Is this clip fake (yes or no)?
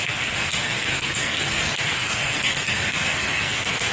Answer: yes